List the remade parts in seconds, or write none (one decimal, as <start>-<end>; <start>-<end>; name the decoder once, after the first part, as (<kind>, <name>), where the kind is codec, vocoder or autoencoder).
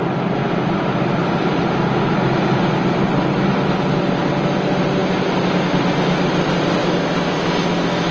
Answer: none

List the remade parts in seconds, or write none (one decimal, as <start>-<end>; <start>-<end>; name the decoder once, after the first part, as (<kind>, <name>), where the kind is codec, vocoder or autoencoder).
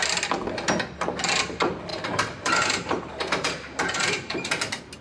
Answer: 1.9-4.5 (vocoder, BigVGAN v2)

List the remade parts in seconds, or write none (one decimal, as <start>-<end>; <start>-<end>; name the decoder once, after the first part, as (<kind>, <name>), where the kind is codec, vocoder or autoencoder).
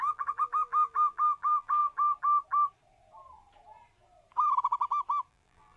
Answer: 0.0-1.8 (vocoder, BigVGAN v2); 5.3-5.8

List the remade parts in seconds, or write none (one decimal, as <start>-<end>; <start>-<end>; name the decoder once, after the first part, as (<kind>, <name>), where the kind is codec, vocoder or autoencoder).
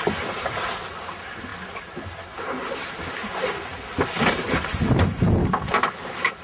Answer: 5.4-6.4 (codec, DAC)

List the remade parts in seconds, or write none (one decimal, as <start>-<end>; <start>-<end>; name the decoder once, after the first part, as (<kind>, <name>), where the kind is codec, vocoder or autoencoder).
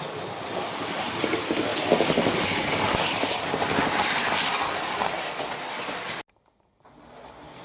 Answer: none